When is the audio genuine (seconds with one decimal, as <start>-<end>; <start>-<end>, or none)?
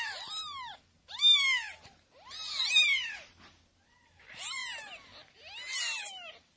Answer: 0.7-3.9; 4.6-6.0